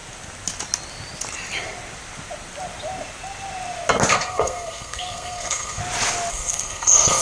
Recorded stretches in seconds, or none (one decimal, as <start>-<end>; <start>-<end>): 0.0-4.1; 5.8-6.3